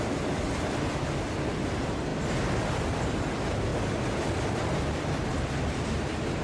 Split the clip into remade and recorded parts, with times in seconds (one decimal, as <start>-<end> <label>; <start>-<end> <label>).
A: 0.0-2.1 remade; 2.1-2.8 recorded; 2.8-3.7 remade; 3.7-4.5 recorded; 4.5-6.4 remade